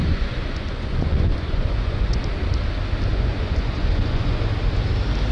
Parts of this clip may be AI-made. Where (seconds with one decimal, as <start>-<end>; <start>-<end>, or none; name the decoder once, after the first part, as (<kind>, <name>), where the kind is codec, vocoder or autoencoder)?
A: 0.0-2.2 (vocoder, Vocos); 3.1-4.4